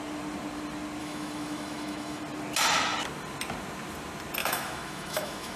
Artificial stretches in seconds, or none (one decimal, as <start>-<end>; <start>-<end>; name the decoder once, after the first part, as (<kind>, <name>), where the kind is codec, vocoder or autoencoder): 1.0-2.2 (autoencoder, DAC-VAE); 4.4-5.6